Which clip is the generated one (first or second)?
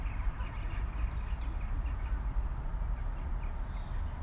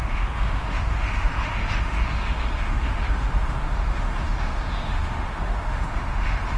second